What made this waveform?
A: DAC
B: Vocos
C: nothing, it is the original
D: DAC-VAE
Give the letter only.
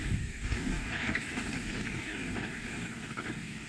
A